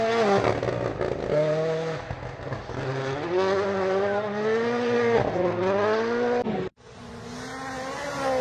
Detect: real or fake real